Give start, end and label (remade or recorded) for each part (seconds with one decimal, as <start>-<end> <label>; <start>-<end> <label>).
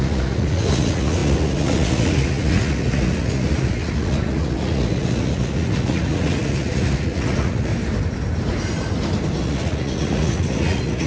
0.0-7.7 remade; 7.7-9.4 recorded; 9.4-11.1 remade